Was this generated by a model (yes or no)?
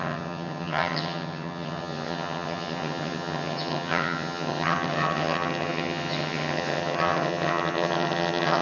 yes